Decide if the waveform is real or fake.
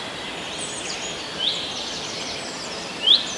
real